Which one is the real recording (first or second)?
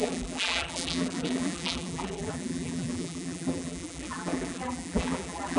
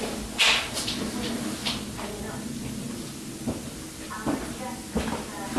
second